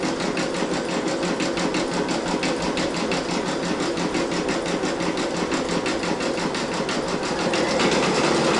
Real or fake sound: real